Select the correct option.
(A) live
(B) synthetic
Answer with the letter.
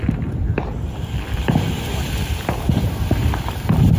A